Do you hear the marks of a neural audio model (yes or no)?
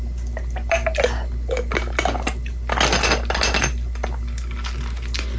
no